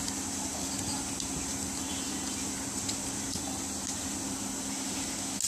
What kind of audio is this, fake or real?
real